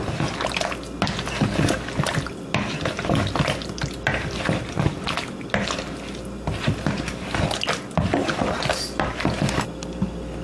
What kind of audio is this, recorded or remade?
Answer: recorded